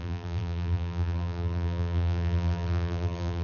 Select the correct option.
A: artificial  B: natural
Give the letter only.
A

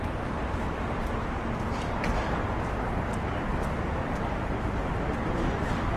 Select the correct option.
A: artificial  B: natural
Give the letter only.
B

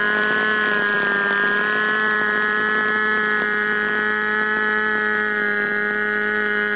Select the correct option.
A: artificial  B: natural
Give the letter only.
B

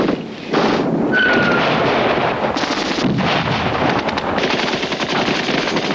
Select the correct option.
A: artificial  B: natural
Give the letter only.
B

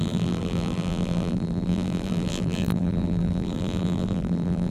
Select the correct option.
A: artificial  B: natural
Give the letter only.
A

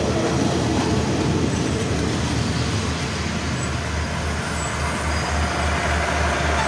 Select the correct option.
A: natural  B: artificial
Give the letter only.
A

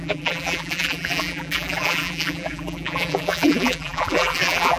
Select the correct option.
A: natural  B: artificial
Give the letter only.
B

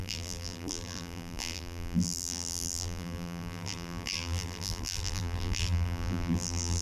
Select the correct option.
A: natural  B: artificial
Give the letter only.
B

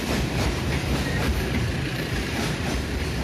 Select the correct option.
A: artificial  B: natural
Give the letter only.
A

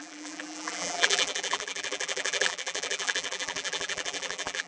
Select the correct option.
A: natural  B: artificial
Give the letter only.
B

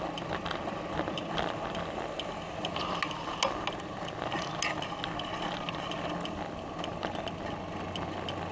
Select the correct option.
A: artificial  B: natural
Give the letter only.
B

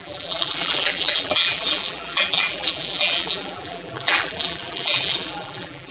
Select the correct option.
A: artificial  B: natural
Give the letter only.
A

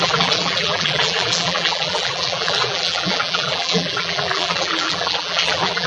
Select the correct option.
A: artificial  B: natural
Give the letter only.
A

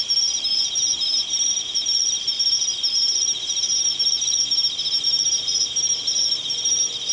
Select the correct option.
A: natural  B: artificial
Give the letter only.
A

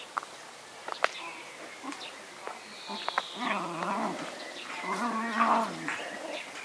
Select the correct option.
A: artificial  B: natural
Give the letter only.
B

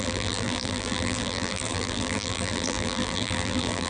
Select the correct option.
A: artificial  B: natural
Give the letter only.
A